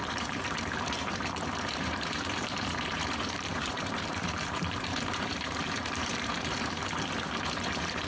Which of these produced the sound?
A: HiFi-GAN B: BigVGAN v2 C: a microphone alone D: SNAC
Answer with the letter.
B